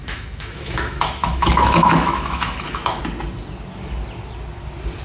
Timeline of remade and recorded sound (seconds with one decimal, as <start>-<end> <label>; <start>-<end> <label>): 0.0-3.0 remade; 3.0-5.0 recorded